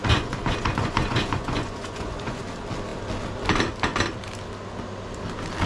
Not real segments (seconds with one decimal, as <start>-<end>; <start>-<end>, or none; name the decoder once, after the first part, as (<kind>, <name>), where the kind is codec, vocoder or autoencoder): 0.0-2.4 (vocoder, Vocos)